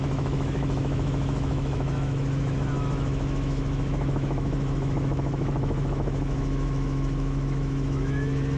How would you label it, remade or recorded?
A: remade